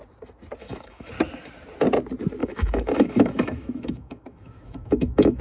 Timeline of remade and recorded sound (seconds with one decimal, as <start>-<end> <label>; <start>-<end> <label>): 0.0-0.6 recorded; 0.6-1.1 remade; 1.1-2.4 recorded; 2.4-5.4 remade